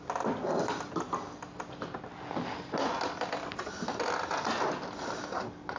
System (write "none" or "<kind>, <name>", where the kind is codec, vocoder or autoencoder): none